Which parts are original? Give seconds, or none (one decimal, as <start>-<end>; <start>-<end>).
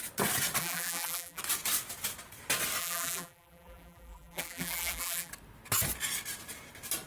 0.0-0.6; 1.4-2.8; 5.3-7.1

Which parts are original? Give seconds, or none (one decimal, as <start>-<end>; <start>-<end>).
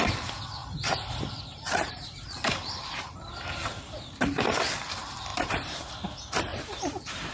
0.0-0.6; 3.8-5.3; 5.9-6.5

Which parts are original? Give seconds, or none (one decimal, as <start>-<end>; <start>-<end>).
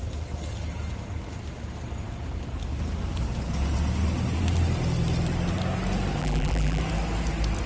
0.0-6.2; 6.8-7.7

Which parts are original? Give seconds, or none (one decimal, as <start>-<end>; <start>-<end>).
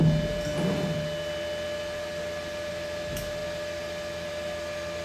0.0-5.0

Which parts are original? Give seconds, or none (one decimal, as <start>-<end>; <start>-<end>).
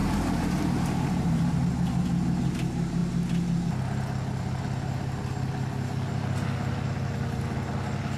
1.4-8.2